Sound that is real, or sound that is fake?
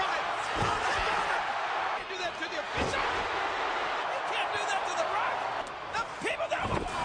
real